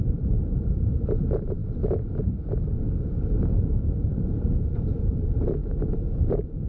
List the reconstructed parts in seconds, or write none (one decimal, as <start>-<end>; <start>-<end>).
0.0-2.7; 3.6-5.6; 6.2-6.7